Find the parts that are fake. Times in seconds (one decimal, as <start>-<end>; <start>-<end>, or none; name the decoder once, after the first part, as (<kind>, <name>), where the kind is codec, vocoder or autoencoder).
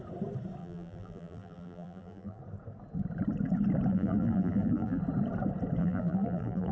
0.6-2.4 (vocoder, BigVGAN v2); 3.9-5.0; 5.8-6.7